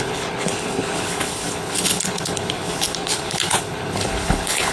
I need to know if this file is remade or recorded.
remade